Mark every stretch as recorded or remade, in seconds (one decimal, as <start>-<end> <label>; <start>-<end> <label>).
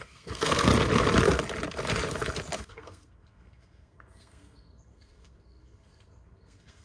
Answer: 0.0-0.7 remade; 0.7-2.6 recorded; 2.6-6.8 remade